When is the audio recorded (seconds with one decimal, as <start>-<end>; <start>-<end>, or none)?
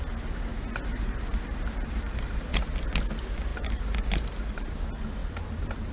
0.0-0.5; 2.5-3.5; 4.8-5.9